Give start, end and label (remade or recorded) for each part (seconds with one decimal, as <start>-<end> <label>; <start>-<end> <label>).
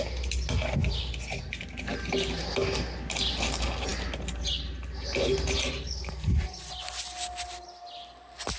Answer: 0.0-8.6 recorded